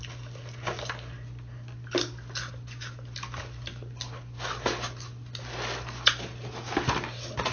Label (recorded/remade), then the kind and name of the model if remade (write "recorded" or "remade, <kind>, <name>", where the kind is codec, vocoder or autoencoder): recorded